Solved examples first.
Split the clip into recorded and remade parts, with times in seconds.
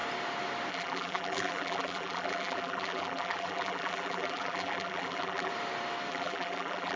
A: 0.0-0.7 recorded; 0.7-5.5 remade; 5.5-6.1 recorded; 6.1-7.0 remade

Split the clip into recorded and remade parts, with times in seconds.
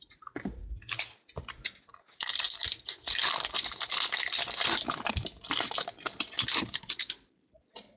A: 0.0-0.6 remade; 0.6-2.6 recorded; 2.6-8.0 remade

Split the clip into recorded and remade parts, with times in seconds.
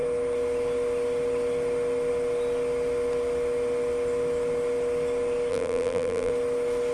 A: 0.0-5.5 recorded; 5.5-6.3 remade; 6.3-6.9 recorded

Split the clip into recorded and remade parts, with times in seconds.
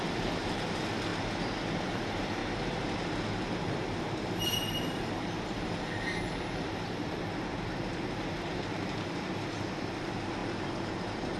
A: 0.0-1.1 remade; 1.1-1.8 recorded; 1.8-2.4 remade; 2.4-4.0 recorded; 4.0-10.4 remade; 10.4-11.0 recorded; 11.0-11.4 remade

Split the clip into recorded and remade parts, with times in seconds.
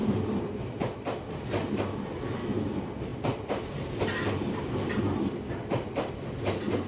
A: 0.0-6.9 recorded